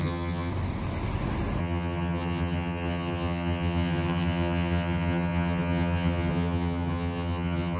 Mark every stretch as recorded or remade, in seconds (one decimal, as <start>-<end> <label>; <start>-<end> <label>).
0.0-0.5 remade; 0.5-1.6 recorded; 1.6-7.8 remade